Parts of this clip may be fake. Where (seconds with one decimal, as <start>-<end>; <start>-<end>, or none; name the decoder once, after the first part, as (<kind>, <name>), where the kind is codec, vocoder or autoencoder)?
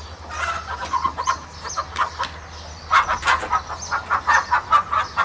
none